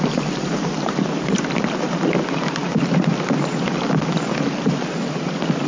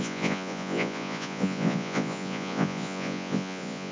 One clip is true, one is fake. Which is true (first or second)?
first